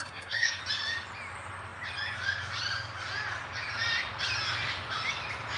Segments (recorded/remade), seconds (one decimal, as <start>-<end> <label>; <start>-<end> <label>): 0.0-0.6 remade; 0.6-5.6 recorded